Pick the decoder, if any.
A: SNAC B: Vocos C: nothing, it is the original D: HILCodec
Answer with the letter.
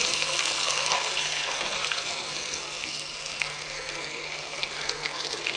A